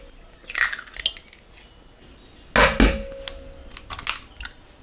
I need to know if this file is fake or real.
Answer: real